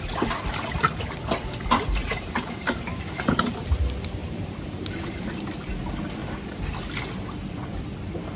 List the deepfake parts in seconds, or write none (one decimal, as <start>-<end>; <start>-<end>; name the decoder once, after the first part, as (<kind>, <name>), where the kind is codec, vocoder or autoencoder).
2.0-2.5 (vocoder, BigVGAN v2); 4.2-5.7; 6.2-6.7